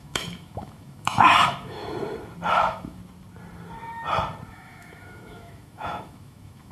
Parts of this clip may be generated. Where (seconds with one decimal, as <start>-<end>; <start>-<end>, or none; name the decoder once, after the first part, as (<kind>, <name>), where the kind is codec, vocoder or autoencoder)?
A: 0.0-1.8 (autoencoder, DAC-VAE); 2.5-3.0; 4.5-6.7